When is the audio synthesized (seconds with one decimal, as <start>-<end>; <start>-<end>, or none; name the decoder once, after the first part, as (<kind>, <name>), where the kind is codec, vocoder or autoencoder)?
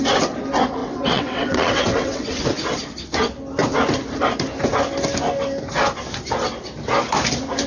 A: 0.8-2.4 (vocoder, WaveNeXt)